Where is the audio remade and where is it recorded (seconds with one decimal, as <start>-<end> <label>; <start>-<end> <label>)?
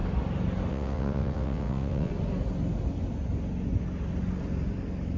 0.0-0.7 recorded; 0.7-2.1 remade; 2.1-5.2 recorded